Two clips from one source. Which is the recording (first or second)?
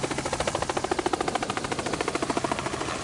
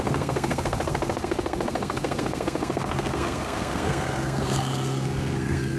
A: first